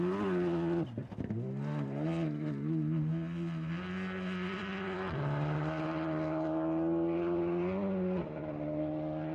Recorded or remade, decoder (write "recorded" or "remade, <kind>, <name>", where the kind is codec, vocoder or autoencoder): recorded